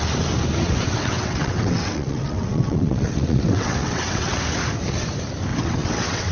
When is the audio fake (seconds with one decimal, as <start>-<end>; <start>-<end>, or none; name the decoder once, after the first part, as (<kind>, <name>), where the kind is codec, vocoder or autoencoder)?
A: 0.6-4.4 (vocoder, WaveNeXt); 5.5-6.3